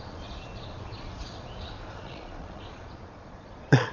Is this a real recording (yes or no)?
no